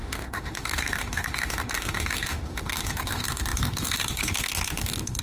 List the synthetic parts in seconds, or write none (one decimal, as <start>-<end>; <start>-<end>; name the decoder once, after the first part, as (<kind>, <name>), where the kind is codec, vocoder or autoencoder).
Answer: 0.0-5.2 (autoencoder, DAC-VAE)